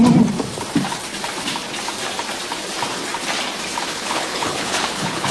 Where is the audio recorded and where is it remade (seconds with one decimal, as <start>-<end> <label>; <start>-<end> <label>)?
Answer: 0.0-3.9 recorded; 3.9-5.3 remade